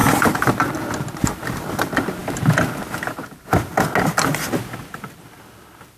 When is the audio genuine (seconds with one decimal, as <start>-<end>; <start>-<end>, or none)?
0.0-6.0